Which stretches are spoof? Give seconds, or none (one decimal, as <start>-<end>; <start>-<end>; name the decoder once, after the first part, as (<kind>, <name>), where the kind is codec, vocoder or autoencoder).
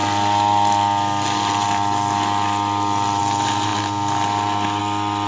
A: none